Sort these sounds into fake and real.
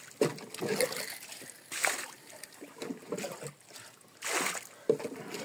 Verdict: real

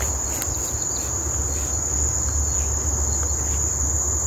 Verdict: real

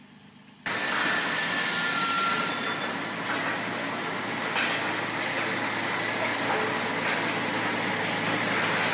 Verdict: real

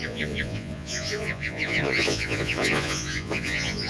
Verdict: fake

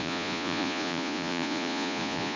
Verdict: fake